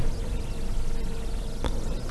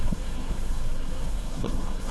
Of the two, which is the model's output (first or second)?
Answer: second